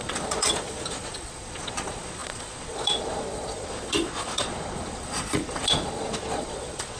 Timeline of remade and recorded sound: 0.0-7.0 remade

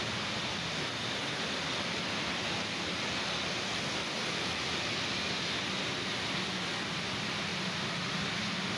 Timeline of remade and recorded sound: 0.0-8.8 recorded

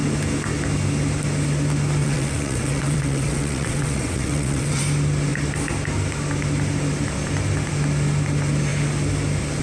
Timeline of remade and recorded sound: 0.0-2.0 recorded; 2.0-4.8 remade; 4.8-9.6 recorded